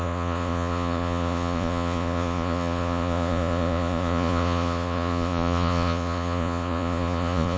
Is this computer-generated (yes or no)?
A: yes